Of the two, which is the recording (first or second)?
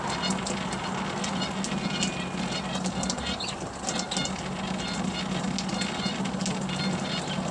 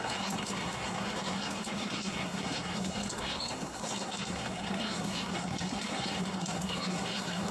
first